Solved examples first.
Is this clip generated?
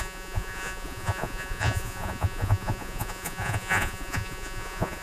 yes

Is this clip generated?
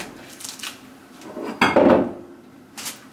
no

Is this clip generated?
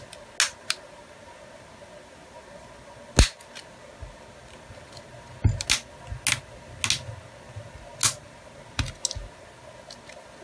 no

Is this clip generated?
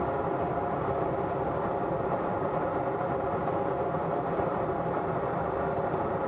yes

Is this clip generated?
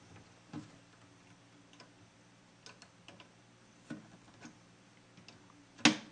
no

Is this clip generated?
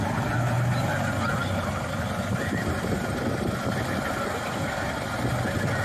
no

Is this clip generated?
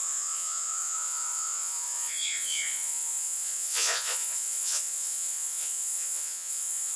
yes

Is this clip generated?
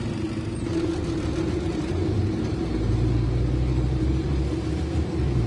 yes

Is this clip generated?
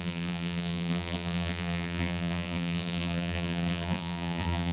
yes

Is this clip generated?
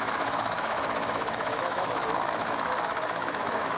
yes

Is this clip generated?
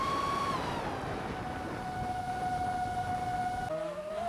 no